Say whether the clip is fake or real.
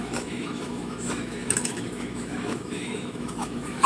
fake